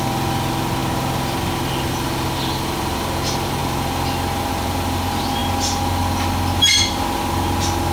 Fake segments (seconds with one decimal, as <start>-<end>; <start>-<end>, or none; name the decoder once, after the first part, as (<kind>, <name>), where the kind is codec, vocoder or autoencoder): none